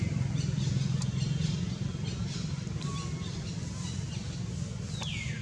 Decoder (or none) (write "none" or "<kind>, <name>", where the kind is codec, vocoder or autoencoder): none